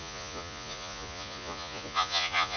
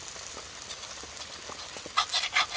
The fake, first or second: first